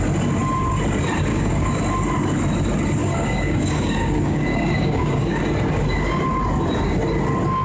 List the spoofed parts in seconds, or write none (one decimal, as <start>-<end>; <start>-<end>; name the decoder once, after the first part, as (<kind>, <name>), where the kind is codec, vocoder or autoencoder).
1.3-1.8 (codec, DAC); 3.0-5.4